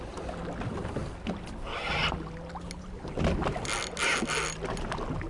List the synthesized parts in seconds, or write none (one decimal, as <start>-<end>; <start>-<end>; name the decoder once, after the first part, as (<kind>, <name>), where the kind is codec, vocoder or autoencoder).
none